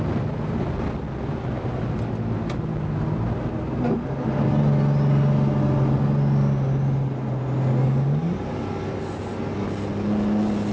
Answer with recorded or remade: recorded